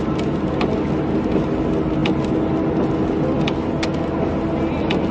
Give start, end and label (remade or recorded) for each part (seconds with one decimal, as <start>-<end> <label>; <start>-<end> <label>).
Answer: 0.0-5.1 recorded